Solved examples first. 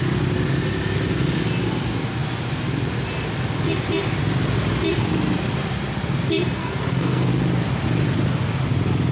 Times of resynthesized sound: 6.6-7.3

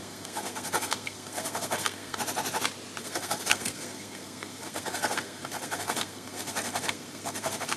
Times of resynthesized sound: 0.0-2.2; 3.0-7.8

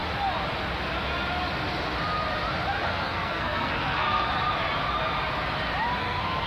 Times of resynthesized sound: 2.8-4.3; 6.0-6.5

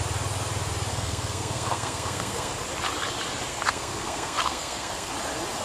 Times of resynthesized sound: 0.9-2.5; 3.5-5.1

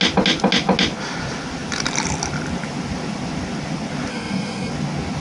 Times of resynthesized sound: 4.1-4.7